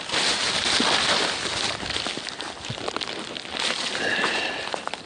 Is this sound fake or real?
real